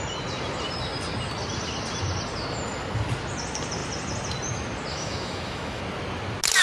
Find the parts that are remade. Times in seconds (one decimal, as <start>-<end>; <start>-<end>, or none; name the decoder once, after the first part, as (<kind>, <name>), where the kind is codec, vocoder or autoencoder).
4.9-5.8 (autoencoder, DAC-VAE)